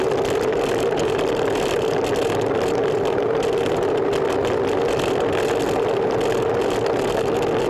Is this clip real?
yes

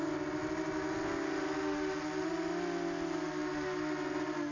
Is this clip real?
yes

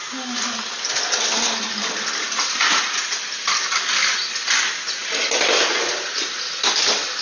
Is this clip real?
yes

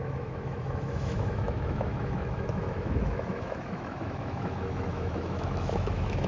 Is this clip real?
no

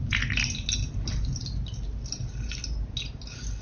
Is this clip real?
yes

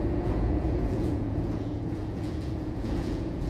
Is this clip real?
no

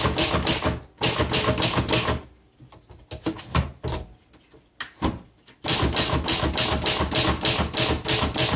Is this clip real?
yes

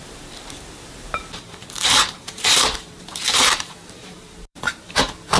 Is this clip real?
no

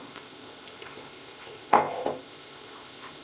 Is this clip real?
no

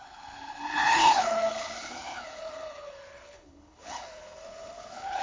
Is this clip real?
no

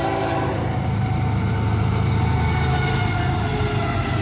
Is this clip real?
yes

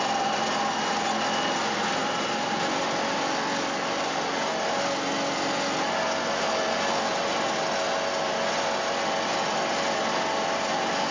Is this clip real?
yes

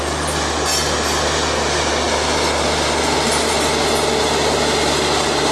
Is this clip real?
yes